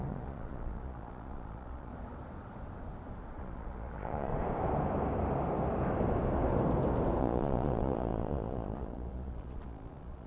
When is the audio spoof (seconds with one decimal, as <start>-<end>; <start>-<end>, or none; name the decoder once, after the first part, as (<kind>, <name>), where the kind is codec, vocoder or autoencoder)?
0.0-1.9 (vocoder, Vocos); 3.3-4.3; 7.2-10.3